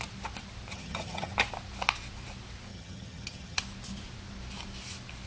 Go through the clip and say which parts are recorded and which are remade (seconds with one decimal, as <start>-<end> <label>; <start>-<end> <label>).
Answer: 0.0-0.7 recorded; 0.7-1.3 remade; 1.3-2.7 recorded; 2.7-3.6 remade; 3.6-5.3 recorded